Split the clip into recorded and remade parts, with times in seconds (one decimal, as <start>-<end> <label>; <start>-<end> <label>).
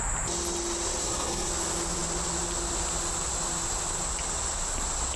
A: 0.0-1.0 recorded; 1.0-1.5 remade; 1.5-5.2 recorded